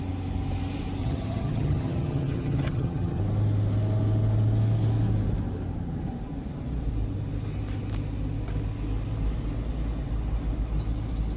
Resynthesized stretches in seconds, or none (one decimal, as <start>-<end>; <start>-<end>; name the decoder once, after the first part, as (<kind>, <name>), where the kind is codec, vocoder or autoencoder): 1.0-3.2 (vocoder, HiFi-GAN)